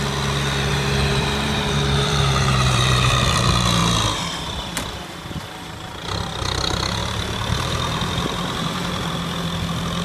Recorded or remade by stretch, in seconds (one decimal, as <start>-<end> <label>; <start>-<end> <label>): 0.0-0.7 recorded; 0.7-3.1 remade; 3.1-7.0 recorded; 7.0-9.1 remade; 9.1-10.0 recorded